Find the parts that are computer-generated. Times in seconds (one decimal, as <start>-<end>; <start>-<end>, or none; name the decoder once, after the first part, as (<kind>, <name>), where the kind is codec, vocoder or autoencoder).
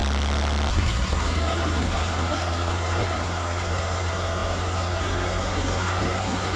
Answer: 0.7-6.6 (codec, SNAC)